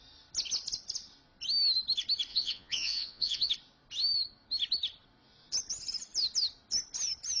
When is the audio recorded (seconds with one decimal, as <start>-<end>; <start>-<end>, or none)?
0.0-2.3; 3.5-7.4

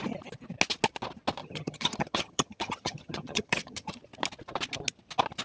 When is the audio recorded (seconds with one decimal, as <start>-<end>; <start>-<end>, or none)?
0.0-1.4; 4.0-5.4

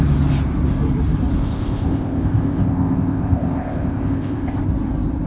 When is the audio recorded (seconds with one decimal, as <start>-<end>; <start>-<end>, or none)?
0.0-1.4; 4.6-5.3

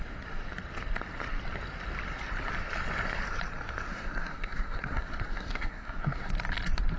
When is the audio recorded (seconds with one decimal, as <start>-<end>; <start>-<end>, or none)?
0.0-3.9; 6.3-7.0

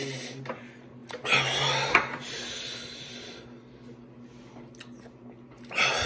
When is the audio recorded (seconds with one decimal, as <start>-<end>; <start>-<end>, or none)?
0.0-6.1

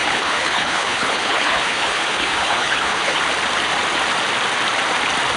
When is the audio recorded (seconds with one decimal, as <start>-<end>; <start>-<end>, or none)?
3.2-5.4